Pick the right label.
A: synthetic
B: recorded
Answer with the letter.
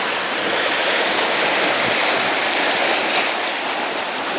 B